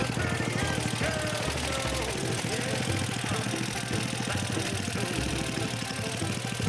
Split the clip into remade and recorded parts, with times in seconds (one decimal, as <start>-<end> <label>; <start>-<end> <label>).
0.0-6.7 recorded